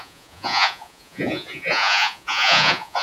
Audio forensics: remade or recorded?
remade